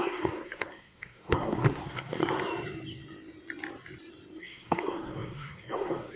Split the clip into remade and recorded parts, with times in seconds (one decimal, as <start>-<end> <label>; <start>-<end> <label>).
0.0-2.2 remade; 2.2-4.4 recorded; 4.4-6.2 remade